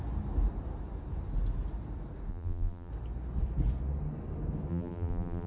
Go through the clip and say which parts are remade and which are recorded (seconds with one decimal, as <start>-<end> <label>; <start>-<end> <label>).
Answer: 0.0-2.3 recorded; 2.3-2.9 remade; 2.9-4.7 recorded; 4.7-5.5 remade